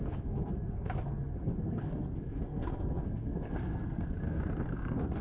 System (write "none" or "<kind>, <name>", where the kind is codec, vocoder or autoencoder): codec, SNAC